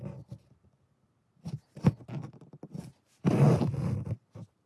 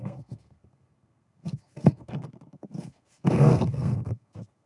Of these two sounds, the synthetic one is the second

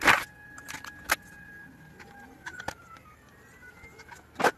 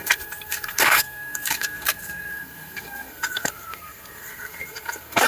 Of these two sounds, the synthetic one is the second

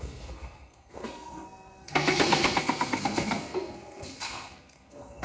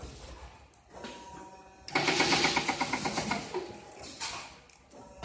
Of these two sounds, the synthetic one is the first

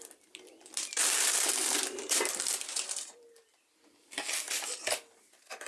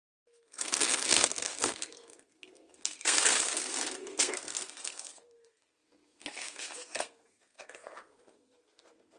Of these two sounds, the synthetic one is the second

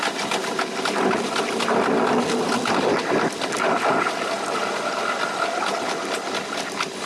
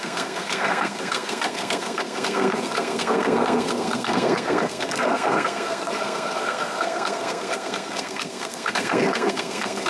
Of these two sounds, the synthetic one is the second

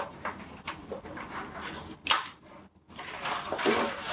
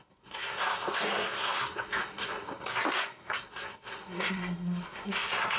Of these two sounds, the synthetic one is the second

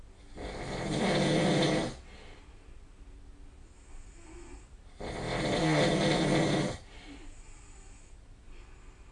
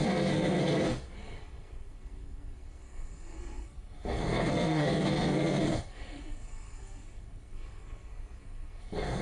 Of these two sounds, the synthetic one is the second